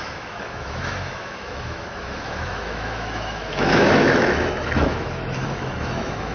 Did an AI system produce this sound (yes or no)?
yes